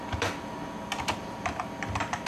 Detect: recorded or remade recorded